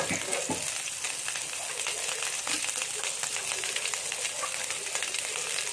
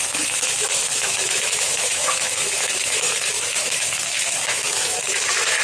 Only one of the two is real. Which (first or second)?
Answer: first